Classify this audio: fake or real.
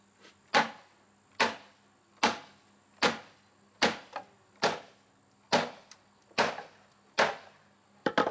real